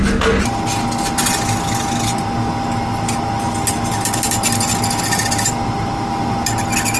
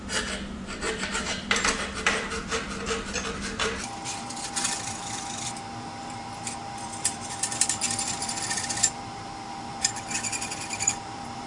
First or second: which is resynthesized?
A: second